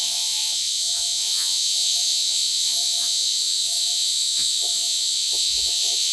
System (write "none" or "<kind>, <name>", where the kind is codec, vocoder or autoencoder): vocoder, Vocos